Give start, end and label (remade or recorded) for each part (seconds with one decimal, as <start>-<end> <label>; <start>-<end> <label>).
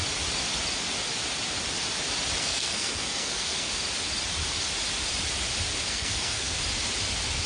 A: 0.0-2.4 recorded; 2.4-3.7 remade; 3.7-5.9 recorded; 5.9-6.6 remade; 6.6-7.5 recorded